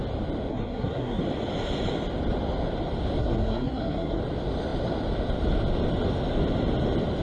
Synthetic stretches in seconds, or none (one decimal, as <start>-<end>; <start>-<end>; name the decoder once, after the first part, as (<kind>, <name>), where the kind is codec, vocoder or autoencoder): 0.5-1.2 (codec, SNAC); 3.2-4.2